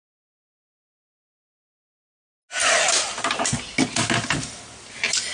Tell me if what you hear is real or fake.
real